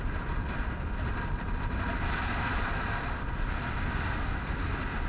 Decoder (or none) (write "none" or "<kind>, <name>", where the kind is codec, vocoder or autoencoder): none